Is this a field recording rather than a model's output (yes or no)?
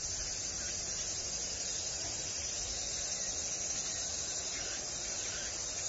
yes